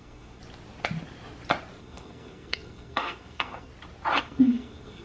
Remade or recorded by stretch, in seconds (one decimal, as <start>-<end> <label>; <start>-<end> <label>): 0.0-0.4 remade; 0.4-1.8 recorded; 1.8-3.7 remade; 3.7-4.2 recorded; 4.2-5.0 remade